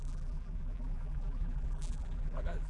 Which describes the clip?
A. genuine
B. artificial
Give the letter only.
B